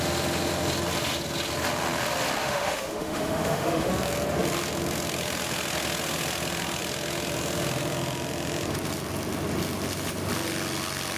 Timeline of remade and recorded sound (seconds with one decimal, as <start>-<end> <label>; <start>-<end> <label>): 0.0-2.4 recorded; 2.4-3.9 remade; 3.9-11.2 recorded